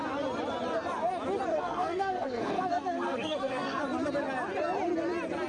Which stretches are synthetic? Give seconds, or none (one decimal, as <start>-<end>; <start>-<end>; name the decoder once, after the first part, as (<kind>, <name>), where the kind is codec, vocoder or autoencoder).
1.5-3.8 (codec, SNAC)